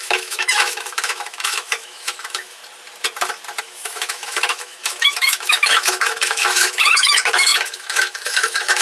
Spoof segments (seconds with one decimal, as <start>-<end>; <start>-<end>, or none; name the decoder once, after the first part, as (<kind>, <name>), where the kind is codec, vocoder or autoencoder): 0.0-2.6 (autoencoder, DAC-VAE); 3.6-8.8